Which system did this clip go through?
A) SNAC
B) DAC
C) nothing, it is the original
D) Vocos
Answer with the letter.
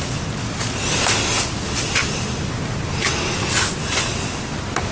C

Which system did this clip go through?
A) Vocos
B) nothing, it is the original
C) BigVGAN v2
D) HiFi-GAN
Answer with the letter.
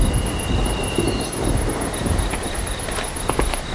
B